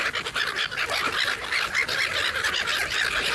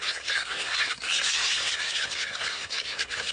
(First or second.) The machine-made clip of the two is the second